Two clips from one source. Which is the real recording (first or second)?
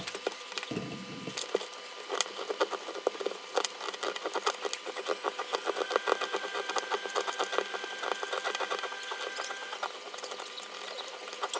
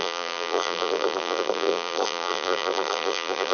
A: first